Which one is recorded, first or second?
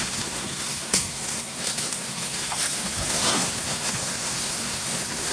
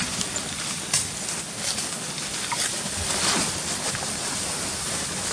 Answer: second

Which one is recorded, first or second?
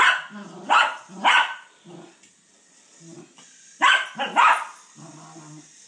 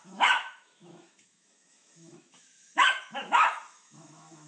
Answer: first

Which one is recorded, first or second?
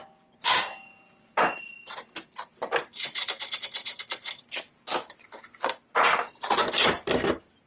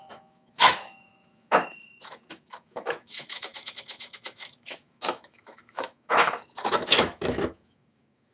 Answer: first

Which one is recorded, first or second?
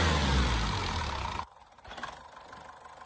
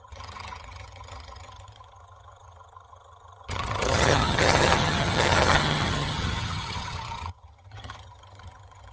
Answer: first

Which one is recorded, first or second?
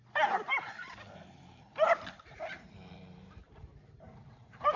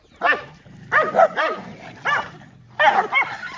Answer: second